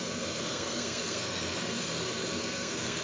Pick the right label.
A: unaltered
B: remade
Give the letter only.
B